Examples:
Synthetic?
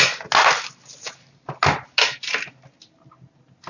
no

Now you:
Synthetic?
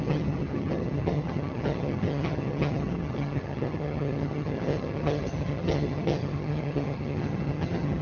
yes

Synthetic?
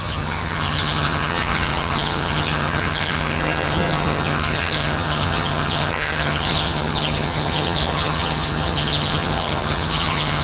yes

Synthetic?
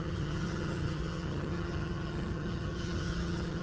yes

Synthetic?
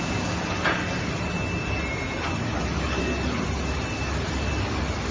no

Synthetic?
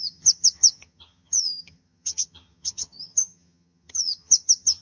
yes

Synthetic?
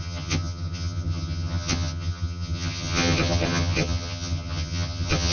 yes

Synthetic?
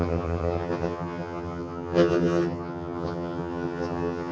yes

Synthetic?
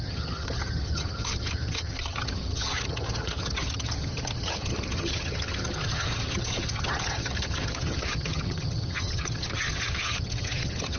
yes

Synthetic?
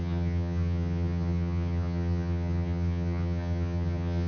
yes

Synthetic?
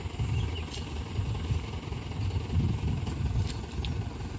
no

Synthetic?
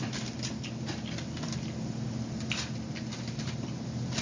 no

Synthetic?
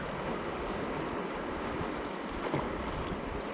no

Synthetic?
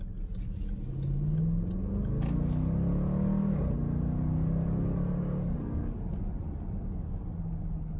no